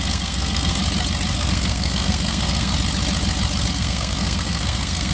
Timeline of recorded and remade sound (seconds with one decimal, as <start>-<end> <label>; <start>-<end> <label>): 0.0-0.8 remade; 0.8-1.3 recorded; 1.3-2.7 remade; 2.7-3.7 recorded; 3.7-5.1 remade